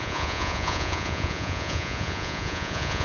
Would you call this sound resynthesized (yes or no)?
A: yes